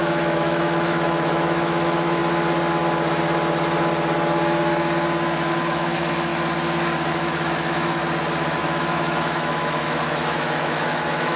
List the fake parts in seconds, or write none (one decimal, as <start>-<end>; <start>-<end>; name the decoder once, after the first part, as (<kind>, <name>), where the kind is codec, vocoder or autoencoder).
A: 0.0-2.2 (autoencoder, DAC-VAE); 5.5-6.3; 7.1-8.0; 8.6-11.4